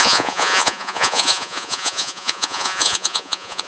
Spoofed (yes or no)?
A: yes